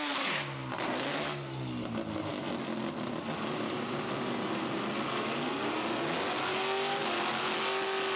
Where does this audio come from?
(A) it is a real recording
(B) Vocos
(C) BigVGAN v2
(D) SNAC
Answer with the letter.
A